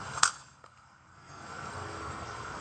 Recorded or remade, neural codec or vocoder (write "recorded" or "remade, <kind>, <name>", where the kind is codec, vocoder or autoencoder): remade, codec, SNAC